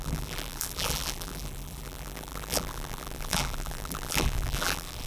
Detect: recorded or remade remade